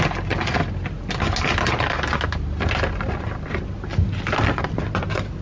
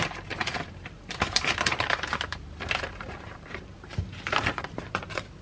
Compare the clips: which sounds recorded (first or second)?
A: first